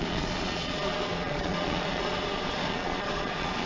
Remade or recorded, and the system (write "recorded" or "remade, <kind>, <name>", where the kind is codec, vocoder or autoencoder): remade, vocoder, Vocos